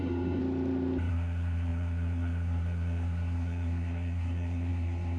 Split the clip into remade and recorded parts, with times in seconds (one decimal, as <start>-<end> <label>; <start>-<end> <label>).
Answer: 0.0-0.4 remade; 0.4-1.1 recorded; 1.1-5.2 remade